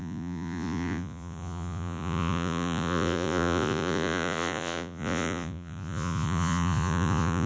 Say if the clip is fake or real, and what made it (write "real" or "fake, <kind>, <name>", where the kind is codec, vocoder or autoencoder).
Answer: fake, vocoder, Vocos